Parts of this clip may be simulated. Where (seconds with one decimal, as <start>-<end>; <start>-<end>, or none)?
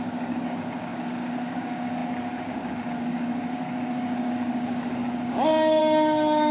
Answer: 0.0-6.5